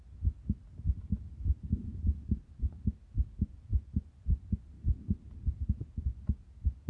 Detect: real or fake real